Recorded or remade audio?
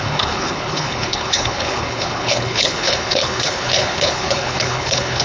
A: remade